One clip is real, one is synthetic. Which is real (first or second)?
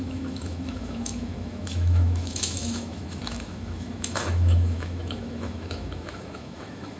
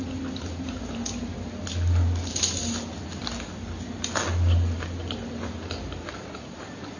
second